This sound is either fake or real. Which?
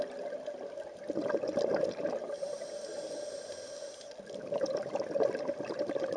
real